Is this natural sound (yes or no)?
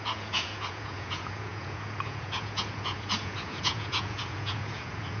no